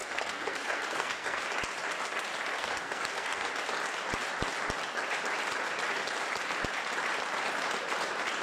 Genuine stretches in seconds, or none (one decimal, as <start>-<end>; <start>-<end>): 1.4-2.5; 3.5-8.4